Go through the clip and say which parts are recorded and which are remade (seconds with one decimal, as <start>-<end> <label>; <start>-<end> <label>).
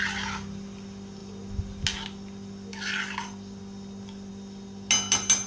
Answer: 0.0-5.5 recorded